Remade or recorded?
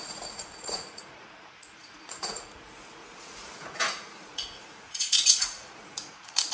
remade